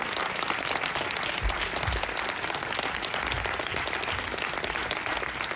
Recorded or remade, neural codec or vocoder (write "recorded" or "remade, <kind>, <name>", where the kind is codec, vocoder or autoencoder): recorded